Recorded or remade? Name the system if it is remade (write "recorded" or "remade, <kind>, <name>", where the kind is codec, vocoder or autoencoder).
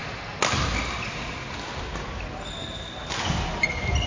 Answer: recorded